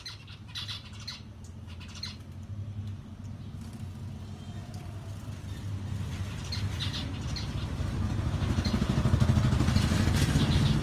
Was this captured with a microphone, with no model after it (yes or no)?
yes